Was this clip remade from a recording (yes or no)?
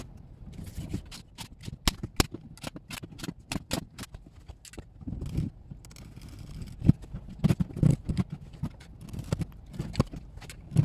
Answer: no